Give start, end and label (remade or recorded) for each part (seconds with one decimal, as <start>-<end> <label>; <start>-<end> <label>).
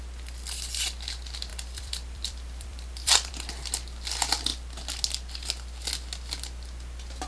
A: 0.0-1.5 recorded; 1.5-3.3 remade; 3.3-7.3 recorded